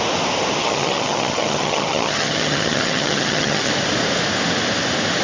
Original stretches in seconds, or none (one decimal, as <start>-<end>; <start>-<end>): 0.0-0.6; 3.7-5.2